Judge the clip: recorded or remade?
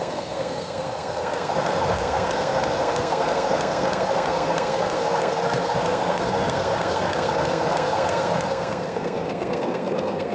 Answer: remade